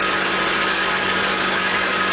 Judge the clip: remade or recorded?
remade